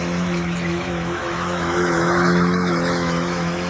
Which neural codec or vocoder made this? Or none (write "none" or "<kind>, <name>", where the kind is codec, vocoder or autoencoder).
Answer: autoencoder, DAC-VAE